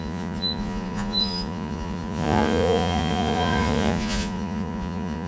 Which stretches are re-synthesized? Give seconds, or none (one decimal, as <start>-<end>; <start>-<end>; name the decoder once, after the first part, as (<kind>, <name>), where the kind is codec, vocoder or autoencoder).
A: 0.0-5.3 (vocoder, Vocos)